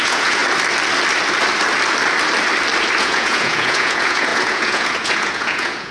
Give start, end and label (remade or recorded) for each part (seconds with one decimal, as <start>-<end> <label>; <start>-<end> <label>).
0.0-0.4 remade; 0.4-3.0 recorded; 3.0-5.9 remade